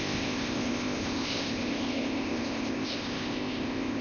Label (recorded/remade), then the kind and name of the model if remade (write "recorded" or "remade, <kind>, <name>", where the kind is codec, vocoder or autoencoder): remade, codec, ZipCodec